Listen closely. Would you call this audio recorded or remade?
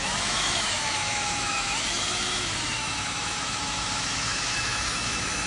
remade